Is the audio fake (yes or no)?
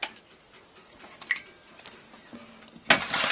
no